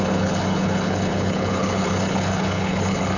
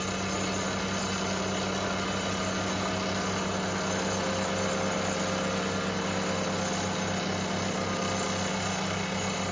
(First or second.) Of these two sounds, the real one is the second